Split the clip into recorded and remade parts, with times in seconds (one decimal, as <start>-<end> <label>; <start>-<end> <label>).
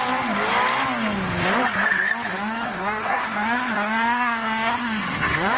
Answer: 0.0-2.3 recorded; 2.3-5.6 remade